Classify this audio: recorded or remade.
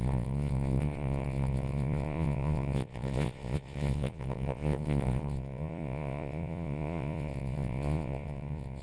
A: remade